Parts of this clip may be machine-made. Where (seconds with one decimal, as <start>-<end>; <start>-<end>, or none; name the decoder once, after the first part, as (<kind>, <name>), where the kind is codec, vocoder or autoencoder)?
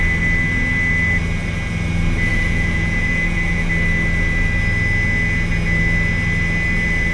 2.3-3.7 (vocoder, Vocos)